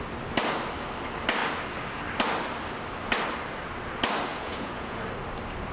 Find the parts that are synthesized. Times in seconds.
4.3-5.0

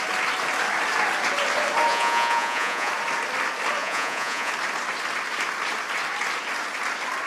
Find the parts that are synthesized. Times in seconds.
1.9-2.9; 3.8-4.5

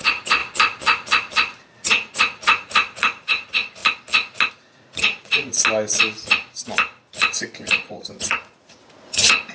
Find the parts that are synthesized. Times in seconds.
0.0-0.4; 1.8-3.8; 4.5-5.5; 7.2-9.5

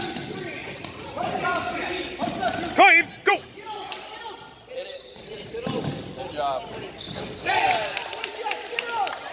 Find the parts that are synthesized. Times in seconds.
0.6-1.8; 3.3-3.9; 4.9-5.5